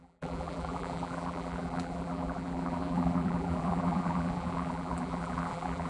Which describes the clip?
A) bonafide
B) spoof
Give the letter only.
B